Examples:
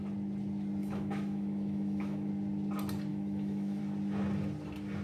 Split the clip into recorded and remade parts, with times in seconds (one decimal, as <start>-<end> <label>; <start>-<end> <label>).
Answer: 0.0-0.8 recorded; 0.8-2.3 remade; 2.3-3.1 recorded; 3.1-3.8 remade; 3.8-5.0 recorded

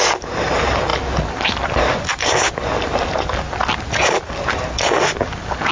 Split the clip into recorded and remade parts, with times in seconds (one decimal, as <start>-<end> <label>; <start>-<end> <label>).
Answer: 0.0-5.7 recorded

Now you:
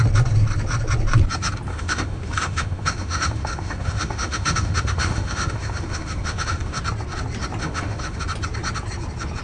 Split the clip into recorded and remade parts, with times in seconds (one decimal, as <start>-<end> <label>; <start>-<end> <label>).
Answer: 0.0-1.7 recorded; 1.7-6.8 remade; 6.8-7.6 recorded; 7.6-8.2 remade; 8.2-9.4 recorded

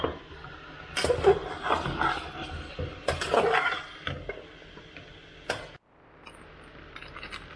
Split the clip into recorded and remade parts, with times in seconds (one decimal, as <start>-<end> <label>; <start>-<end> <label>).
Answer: 0.0-7.6 recorded